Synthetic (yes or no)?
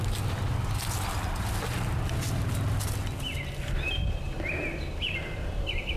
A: no